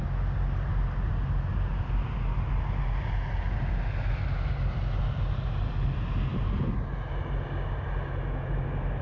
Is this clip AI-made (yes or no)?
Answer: no